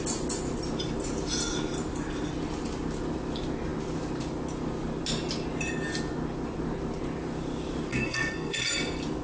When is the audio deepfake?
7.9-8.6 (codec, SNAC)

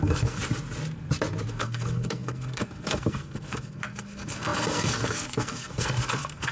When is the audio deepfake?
0.0-0.4 (codec, SNAC); 1.5-6.5

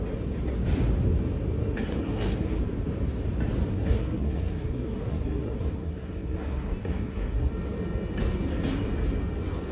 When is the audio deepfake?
1.6-2.6 (codec, SNAC); 3.7-7.5

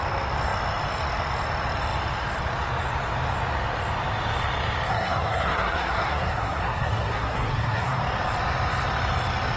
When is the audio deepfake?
4.9-8.0 (codec, SNAC)

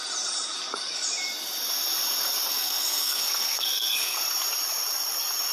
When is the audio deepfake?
2.5-4.2 (codec, SNAC)